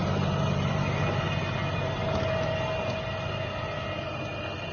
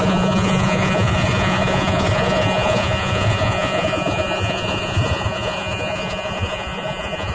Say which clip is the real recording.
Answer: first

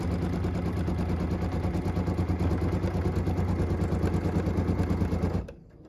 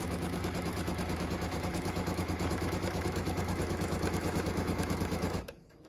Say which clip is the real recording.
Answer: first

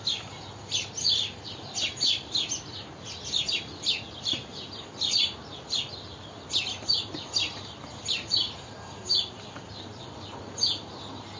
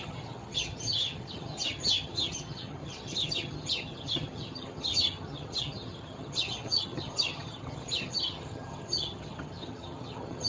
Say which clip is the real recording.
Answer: first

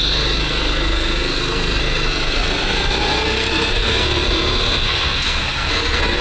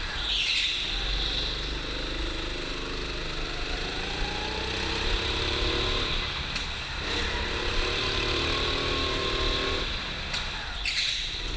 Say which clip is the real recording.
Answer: second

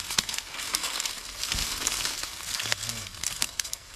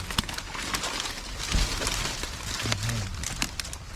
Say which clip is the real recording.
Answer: second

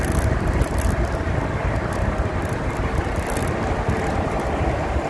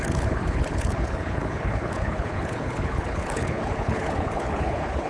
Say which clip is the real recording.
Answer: first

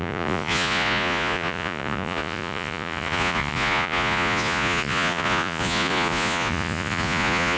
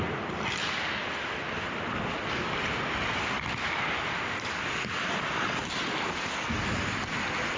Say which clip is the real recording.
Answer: second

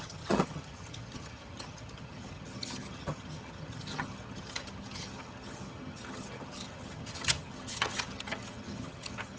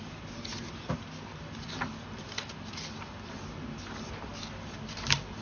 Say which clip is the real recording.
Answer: second